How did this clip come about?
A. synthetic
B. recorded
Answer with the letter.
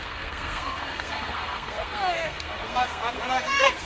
A